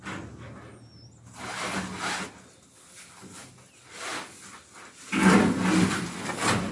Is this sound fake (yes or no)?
no